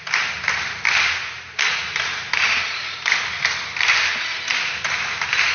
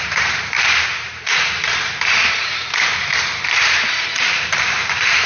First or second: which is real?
first